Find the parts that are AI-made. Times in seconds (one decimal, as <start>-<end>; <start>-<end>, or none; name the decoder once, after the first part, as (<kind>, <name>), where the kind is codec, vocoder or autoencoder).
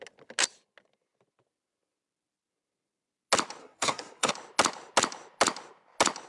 3.6-4.3 (codec, SNAC)